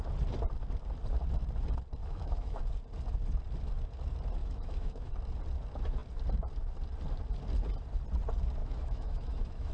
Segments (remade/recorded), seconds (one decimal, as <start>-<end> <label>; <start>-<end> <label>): 0.0-2.0 recorded; 2.0-2.6 remade; 2.6-4.4 recorded; 4.4-5.1 remade; 5.1-8.6 recorded; 8.6-9.7 remade